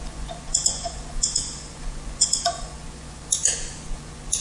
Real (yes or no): no